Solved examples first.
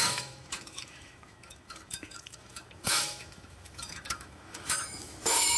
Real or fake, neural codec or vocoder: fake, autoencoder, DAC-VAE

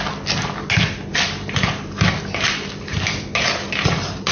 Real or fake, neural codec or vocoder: real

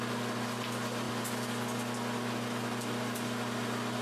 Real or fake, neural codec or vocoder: real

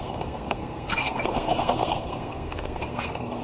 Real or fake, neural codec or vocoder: fake, codec, SNAC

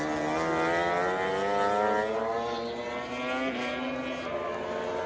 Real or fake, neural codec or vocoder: real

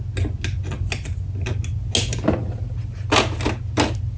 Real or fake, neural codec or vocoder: real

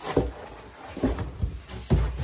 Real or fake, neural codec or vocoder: real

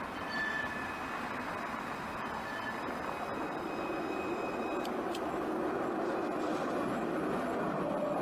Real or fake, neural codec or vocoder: real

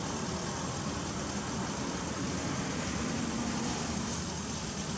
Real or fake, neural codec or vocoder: real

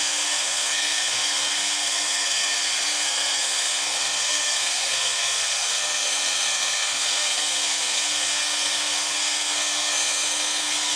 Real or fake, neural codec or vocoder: fake, codec, SNAC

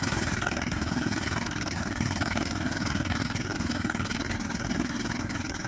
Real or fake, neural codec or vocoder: fake, codec, SNAC